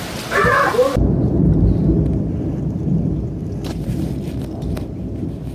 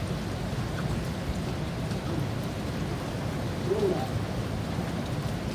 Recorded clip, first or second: first